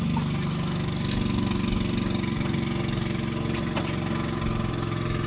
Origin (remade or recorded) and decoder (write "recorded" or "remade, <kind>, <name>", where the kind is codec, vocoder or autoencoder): recorded